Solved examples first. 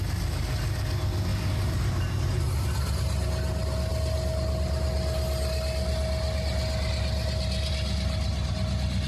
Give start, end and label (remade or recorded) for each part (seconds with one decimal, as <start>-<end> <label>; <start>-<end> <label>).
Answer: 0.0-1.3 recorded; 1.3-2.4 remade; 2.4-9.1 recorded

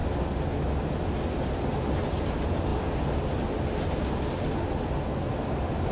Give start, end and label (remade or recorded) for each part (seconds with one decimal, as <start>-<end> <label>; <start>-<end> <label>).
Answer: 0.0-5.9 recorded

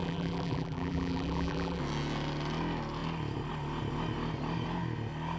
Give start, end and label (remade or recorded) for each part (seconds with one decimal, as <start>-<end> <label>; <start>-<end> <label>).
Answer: 0.0-1.8 remade; 1.8-5.4 recorded